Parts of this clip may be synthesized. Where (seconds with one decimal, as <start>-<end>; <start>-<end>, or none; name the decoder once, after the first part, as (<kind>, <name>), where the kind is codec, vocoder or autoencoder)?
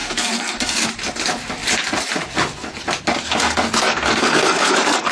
0.0-0.9 (codec, SNAC); 3.1-5.1